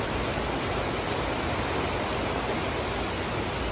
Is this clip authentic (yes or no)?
yes